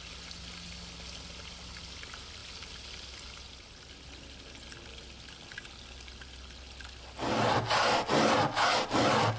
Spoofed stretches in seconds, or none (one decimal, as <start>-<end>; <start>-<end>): none